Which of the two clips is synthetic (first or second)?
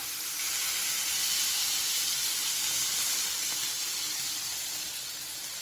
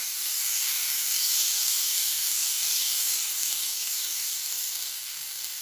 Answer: second